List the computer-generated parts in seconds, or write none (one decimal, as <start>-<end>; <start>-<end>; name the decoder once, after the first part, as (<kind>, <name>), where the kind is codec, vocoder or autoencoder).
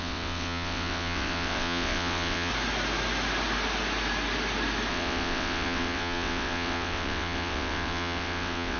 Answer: 0.0-2.5 (vocoder, WaveNeXt); 4.9-8.8